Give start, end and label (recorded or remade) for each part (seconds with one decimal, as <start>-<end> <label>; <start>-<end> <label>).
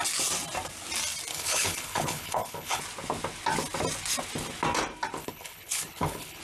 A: 0.0-1.3 recorded; 1.3-2.8 remade; 2.8-5.2 recorded; 5.2-6.4 remade